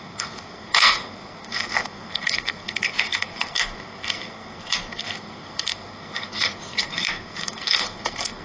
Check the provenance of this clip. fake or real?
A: fake